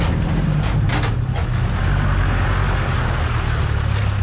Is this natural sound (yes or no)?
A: yes